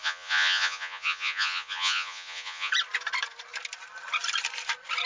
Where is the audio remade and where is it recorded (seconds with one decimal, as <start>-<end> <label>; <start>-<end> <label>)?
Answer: 0.0-2.7 remade; 2.7-5.1 recorded